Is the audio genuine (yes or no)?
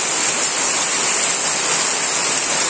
yes